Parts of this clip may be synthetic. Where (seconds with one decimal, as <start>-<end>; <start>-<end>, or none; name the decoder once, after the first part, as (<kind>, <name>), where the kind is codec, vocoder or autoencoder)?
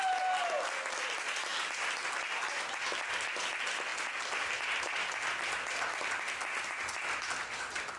none